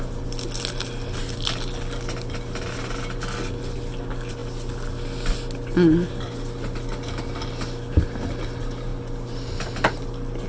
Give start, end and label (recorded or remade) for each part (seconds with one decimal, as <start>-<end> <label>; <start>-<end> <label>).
0.0-10.5 recorded